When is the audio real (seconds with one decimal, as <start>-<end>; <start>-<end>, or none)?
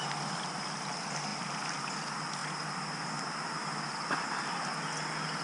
0.0-5.4